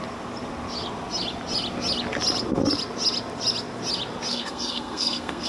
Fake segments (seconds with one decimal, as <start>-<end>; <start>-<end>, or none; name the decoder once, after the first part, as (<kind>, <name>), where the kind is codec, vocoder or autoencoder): 4.3-5.5 (codec, SNAC)